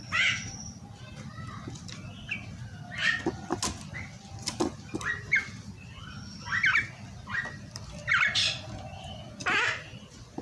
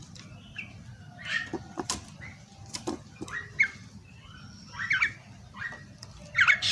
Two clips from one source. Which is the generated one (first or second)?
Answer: second